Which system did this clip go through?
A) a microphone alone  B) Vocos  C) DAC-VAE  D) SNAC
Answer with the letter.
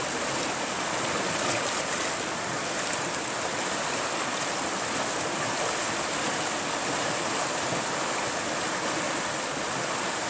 A